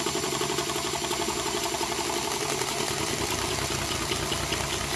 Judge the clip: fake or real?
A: real